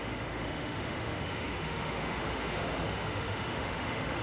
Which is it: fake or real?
fake